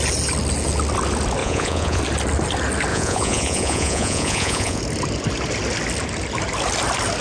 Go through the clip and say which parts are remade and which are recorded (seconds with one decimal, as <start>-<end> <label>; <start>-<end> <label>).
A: 0.0-1.4 recorded; 1.4-2.0 remade; 2.0-2.9 recorded; 2.9-4.8 remade; 4.8-7.2 recorded